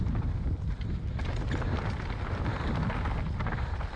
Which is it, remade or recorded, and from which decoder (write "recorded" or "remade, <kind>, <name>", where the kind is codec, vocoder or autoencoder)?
recorded